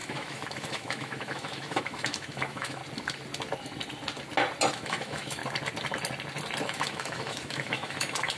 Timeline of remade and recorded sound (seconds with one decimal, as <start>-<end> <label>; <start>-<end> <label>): 0.0-2.8 remade; 2.8-4.7 recorded; 4.7-5.4 remade; 5.4-6.6 recorded; 6.6-8.4 remade

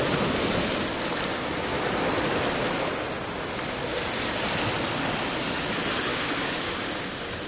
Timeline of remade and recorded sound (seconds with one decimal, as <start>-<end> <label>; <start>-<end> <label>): 0.0-6.1 recorded; 6.1-6.7 remade; 6.7-7.5 recorded

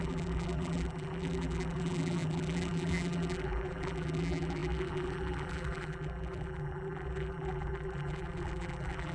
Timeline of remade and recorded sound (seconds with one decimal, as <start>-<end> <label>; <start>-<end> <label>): 0.0-9.1 remade

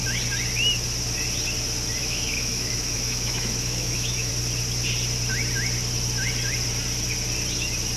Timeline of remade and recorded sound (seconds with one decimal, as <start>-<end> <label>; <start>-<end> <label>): 0.0-2.0 recorded; 2.0-4.3 remade; 4.3-8.0 recorded

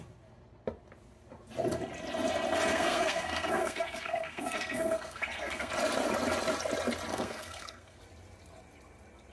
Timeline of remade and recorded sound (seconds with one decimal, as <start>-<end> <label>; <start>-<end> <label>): 0.0-2.7 recorded; 2.7-5.7 remade; 5.7-7.1 recorded; 7.1-8.0 remade; 8.0-9.3 recorded

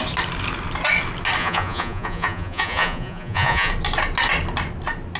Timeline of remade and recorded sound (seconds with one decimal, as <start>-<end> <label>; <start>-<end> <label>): 0.0-1.4 recorded; 1.4-3.7 remade; 3.7-5.2 recorded